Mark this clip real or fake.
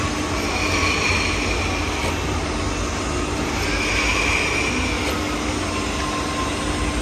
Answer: real